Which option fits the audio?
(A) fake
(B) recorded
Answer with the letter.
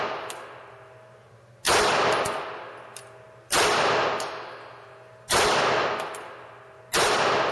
B